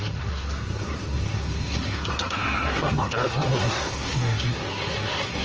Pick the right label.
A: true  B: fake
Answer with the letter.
B